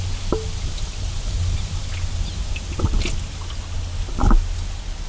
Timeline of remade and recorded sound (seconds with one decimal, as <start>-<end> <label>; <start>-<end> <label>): 0.0-5.1 recorded